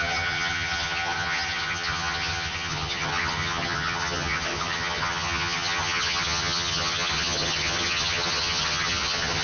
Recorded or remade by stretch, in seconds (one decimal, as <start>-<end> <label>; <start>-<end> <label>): 0.0-9.4 remade